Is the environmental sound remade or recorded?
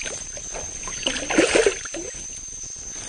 recorded